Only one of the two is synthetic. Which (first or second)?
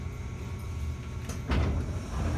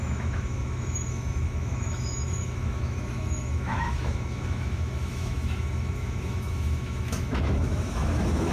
second